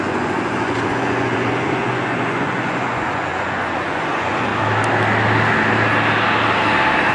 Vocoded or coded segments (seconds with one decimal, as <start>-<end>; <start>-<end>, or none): 0.0-4.5

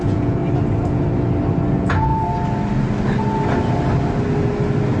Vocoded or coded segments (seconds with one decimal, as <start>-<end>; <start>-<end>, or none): 0.0-0.4; 1.7-2.1

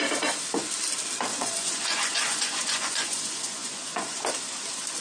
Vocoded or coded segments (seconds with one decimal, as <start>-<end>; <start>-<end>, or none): 1.3-4.3

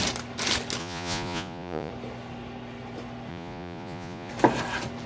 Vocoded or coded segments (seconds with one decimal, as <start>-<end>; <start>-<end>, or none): 0.8-1.9; 3.3-4.3